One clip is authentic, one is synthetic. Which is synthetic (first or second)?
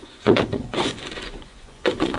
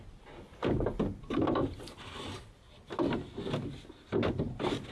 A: first